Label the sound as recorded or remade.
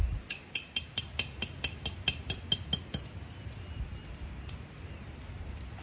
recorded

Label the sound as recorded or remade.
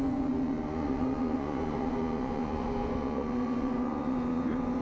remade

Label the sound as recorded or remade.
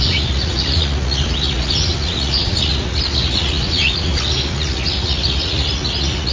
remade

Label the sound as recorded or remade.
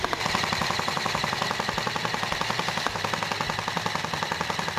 recorded